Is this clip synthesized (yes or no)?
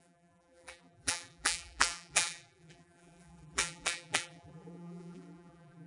yes